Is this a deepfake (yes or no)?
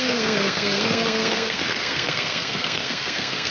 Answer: yes